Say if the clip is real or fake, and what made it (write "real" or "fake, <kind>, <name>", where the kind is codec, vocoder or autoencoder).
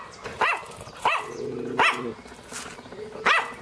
real